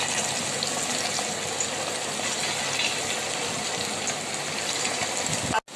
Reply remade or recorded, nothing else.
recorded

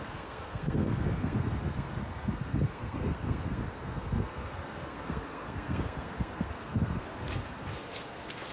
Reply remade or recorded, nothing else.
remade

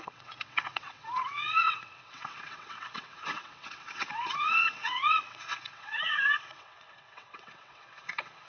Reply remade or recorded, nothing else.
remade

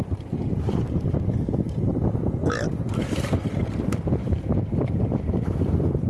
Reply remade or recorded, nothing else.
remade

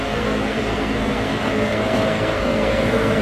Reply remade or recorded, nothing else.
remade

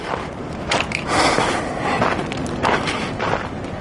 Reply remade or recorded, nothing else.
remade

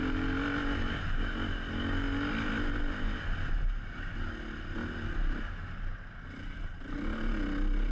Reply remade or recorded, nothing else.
recorded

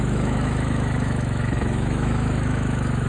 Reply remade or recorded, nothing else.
remade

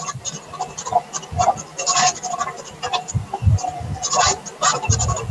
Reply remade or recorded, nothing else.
recorded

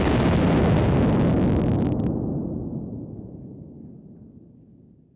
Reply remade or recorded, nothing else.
recorded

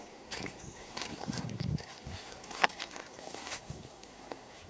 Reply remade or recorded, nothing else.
remade